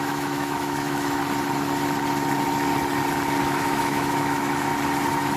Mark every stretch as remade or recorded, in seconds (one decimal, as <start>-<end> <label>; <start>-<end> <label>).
0.0-1.2 remade; 1.2-3.4 recorded; 3.4-4.7 remade; 4.7-5.4 recorded